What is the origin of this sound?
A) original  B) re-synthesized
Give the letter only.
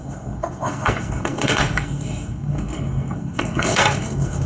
B